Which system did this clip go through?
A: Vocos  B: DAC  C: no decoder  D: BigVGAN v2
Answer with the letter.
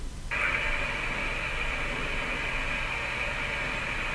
C